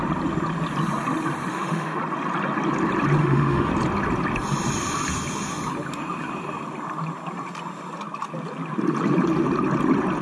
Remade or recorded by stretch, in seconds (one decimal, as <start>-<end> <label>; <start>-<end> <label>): 0.0-1.5 recorded; 1.5-2.0 remade; 2.0-3.2 recorded; 3.2-3.7 remade; 3.7-10.2 recorded